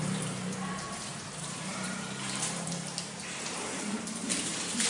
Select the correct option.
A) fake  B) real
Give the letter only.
A